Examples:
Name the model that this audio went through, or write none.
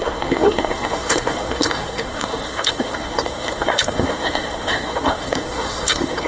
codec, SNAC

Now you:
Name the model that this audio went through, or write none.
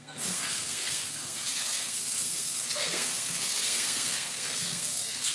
codec, SNAC